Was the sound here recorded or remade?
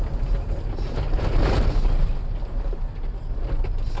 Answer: recorded